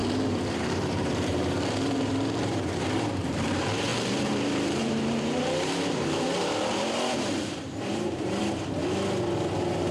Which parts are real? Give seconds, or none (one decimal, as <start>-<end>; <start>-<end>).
8.8-9.5